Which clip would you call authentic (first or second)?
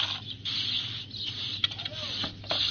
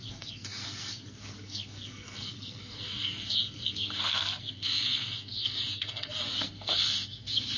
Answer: first